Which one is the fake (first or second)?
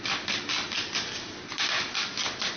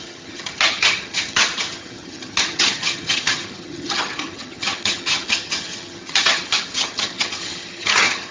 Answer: second